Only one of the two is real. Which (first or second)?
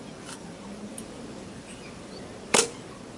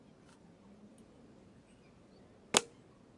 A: second